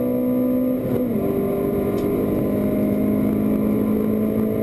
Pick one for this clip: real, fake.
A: real